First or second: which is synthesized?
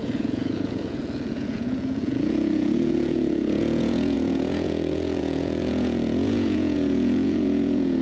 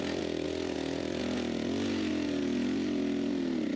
first